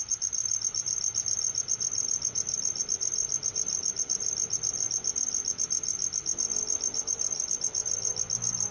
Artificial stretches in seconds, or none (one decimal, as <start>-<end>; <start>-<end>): none